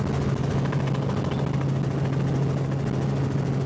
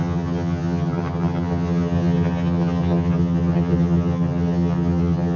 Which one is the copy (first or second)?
second